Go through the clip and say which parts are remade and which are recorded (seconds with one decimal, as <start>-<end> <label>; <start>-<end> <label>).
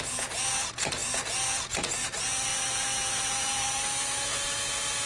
0.0-5.1 remade